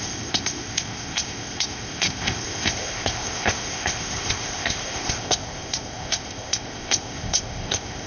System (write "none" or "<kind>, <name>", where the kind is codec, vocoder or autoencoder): codec, ZipCodec